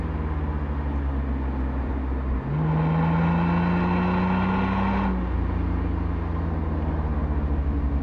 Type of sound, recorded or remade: recorded